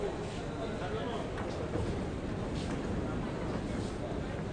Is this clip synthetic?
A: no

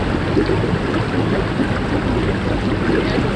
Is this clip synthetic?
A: no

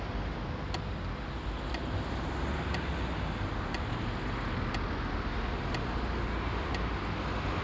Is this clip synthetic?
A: no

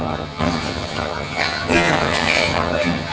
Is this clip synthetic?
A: yes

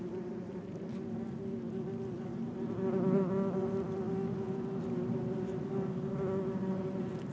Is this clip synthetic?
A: no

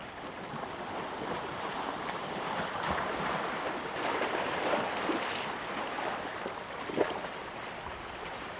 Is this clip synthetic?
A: no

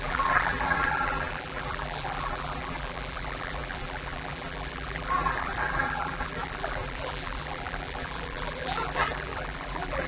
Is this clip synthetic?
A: yes